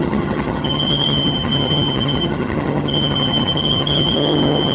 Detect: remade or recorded remade